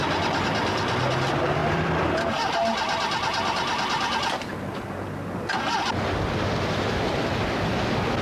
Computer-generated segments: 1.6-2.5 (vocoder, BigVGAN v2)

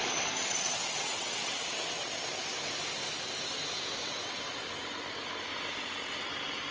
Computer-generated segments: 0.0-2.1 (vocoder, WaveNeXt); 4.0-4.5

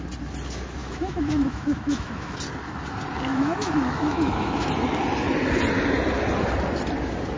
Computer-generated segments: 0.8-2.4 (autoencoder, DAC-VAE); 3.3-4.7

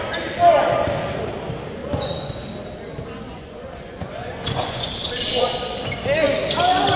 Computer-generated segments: 1.8-2.3 (vocoder, Vocos); 3.3-4.9